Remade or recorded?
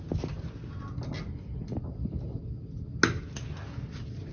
recorded